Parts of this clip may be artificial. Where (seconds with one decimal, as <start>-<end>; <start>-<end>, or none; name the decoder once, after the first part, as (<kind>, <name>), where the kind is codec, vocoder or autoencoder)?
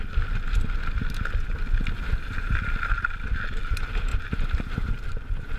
4.1-4.9 (vocoder, BigVGAN v2)